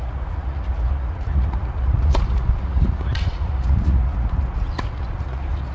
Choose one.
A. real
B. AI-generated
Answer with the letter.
B